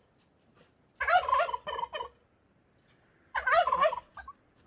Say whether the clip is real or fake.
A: real